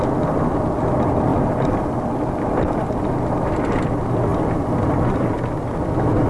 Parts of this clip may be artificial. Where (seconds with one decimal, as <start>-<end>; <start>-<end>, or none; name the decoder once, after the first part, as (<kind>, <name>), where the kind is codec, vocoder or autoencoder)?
none